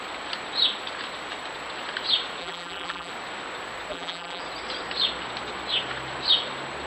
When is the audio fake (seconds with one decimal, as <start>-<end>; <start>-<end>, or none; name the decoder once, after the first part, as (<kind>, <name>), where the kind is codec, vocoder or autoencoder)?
2.4-3.1 (vocoder, BigVGAN v2); 3.9-4.4